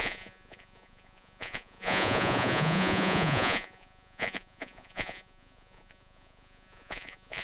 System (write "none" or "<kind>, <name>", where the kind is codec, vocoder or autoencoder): vocoder, Vocos